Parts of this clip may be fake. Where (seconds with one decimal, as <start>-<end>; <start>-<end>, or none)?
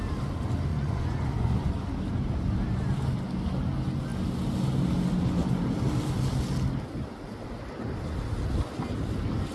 0.7-1.7